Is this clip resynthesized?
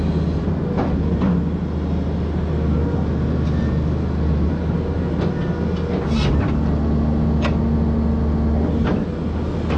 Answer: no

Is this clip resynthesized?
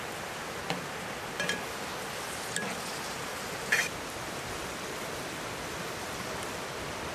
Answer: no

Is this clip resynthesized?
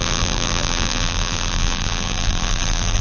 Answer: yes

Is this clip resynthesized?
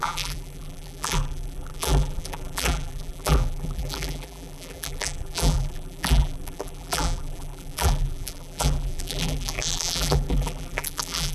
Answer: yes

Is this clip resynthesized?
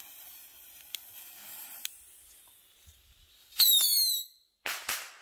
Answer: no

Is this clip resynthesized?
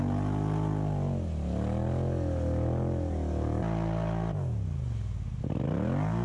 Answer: no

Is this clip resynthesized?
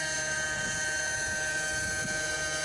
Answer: yes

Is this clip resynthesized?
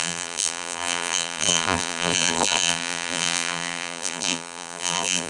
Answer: yes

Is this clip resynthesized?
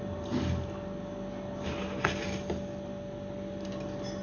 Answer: yes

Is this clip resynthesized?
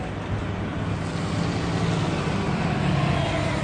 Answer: no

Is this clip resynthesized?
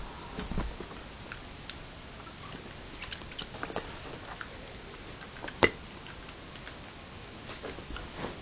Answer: no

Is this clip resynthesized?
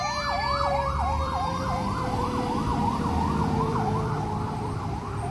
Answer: yes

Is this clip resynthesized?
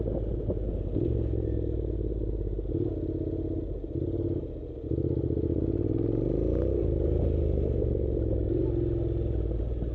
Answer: no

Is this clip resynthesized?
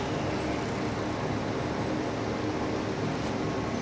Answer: no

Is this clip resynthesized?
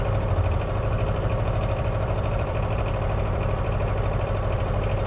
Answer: yes